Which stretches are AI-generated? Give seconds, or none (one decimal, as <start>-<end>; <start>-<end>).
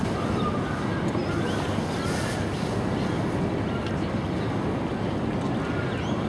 none